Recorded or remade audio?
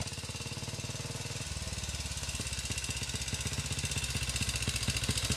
recorded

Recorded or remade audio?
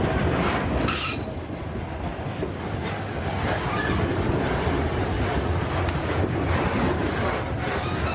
recorded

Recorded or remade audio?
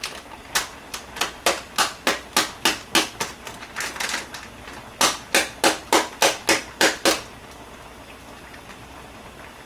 recorded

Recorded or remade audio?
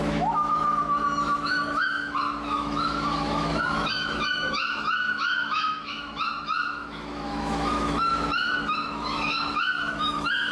remade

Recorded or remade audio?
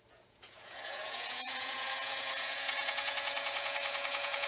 remade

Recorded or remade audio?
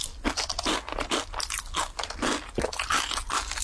recorded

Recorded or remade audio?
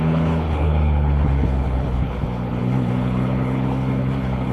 remade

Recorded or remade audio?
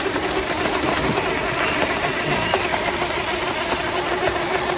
remade